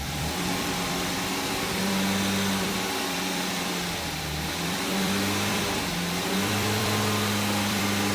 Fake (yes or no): yes